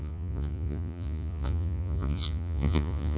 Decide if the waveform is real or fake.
fake